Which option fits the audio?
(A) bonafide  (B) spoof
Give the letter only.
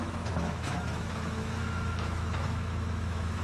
B